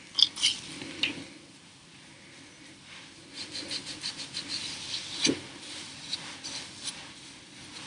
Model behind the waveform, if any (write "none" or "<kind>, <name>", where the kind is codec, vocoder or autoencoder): none